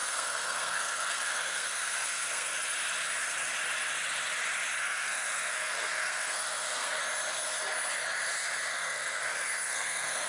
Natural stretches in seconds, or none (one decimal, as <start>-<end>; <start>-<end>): 2.5-4.8; 7.0-8.7